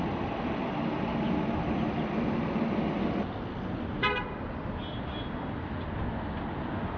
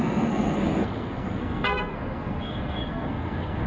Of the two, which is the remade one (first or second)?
second